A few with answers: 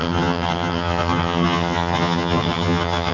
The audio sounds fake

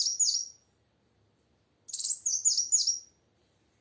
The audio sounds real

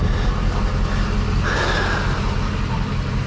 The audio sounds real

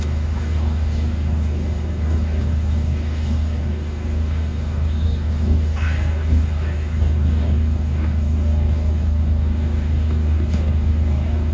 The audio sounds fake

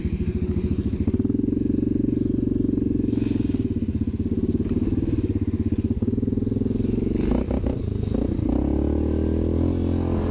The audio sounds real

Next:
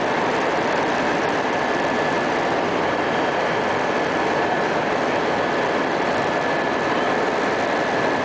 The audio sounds real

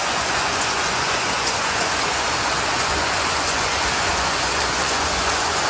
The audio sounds fake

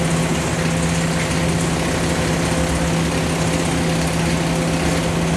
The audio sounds real